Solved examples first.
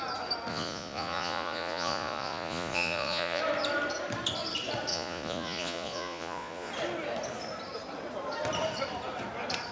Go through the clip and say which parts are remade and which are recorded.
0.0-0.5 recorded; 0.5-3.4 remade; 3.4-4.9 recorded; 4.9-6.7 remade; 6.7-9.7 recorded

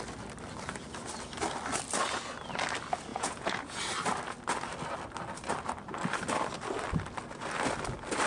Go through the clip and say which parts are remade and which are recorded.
0.0-3.1 recorded; 3.1-3.8 remade; 3.8-8.3 recorded

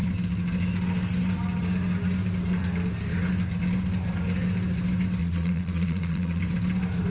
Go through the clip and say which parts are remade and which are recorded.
0.0-5.2 recorded; 5.2-6.4 remade; 6.4-7.1 recorded

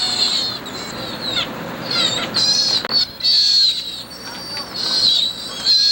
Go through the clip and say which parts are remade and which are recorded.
0.0-5.9 recorded